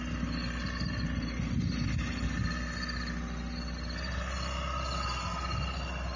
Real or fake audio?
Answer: real